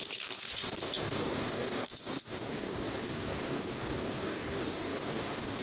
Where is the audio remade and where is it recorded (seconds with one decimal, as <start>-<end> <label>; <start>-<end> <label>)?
0.0-5.6 remade